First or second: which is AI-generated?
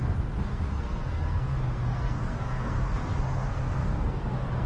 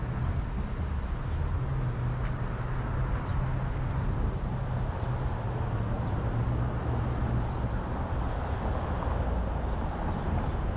first